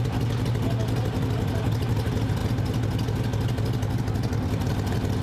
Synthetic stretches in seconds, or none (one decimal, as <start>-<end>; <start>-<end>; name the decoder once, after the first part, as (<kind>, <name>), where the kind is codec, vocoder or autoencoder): none

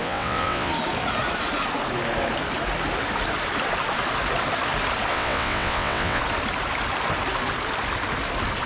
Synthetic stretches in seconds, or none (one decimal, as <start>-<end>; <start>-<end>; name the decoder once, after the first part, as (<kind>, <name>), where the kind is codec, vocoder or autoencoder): 0.0-0.7 (vocoder, WaveNeXt); 5.1-6.2

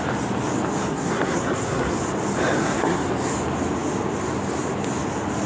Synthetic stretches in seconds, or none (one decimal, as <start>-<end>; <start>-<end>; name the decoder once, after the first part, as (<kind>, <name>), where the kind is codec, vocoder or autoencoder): 0.9-1.9 (codec, SNAC); 2.6-3.1